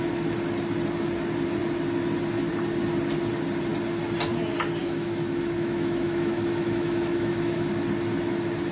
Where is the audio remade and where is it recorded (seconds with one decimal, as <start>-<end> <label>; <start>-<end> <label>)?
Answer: 0.0-4.8 recorded; 4.8-7.7 remade; 7.7-8.7 recorded